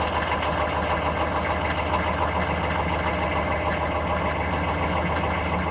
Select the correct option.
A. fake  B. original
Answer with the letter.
B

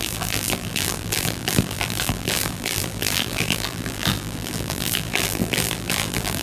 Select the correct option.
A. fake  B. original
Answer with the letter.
A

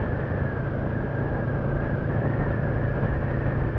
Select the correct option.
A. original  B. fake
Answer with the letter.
A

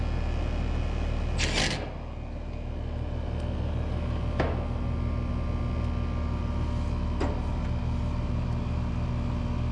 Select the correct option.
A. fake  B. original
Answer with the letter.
B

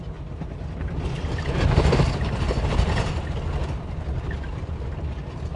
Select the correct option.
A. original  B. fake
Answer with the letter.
A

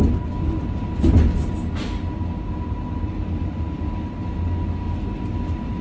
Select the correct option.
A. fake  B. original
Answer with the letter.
B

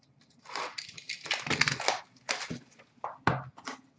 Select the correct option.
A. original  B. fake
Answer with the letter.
A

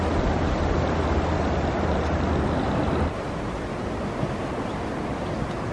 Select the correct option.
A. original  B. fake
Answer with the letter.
A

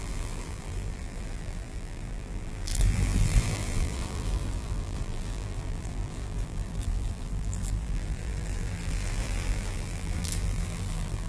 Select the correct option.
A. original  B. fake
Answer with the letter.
B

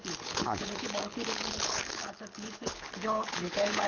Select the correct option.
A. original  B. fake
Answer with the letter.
B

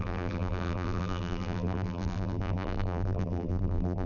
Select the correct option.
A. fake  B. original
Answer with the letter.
A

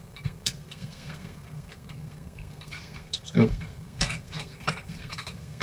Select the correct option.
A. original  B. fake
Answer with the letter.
B